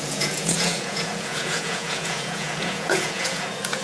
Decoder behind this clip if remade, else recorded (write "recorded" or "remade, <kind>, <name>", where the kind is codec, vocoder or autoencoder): remade, vocoder, Vocos